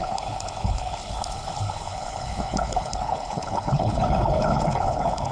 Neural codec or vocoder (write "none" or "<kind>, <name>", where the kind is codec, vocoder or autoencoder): codec, HILCodec